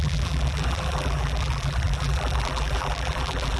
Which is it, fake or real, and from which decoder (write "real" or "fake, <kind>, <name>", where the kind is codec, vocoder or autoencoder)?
fake, vocoder, BigVGAN v2